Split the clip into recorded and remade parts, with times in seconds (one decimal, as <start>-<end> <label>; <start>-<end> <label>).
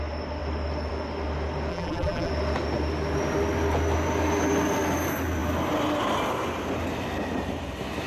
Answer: 0.0-1.7 recorded; 1.7-2.3 remade; 2.3-8.1 recorded